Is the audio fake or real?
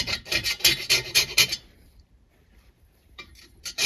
fake